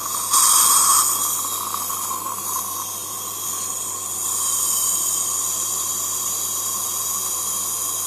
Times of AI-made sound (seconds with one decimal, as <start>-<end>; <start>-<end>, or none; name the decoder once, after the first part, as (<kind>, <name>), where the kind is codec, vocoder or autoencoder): 3.0-5.3 (vocoder, BigVGAN v2)